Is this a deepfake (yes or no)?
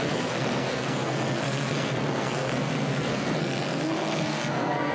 yes